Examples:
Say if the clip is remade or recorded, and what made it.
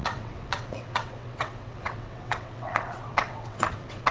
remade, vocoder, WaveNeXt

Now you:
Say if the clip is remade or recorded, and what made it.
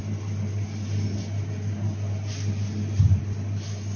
recorded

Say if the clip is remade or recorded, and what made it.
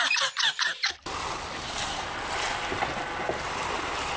recorded